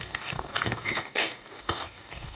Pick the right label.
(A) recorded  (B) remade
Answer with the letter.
B